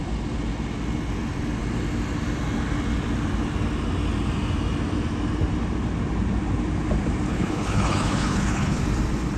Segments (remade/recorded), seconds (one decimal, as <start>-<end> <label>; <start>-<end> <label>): 0.0-7.3 recorded; 7.3-8.8 remade; 8.8-9.4 recorded